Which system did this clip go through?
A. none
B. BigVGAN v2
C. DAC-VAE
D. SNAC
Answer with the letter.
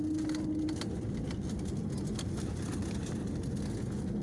A